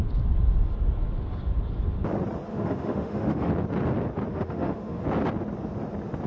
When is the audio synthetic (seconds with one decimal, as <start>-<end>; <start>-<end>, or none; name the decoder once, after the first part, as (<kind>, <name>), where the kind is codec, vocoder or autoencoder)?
2.5-3.5 (autoencoder, DAC-VAE); 4.3-5.0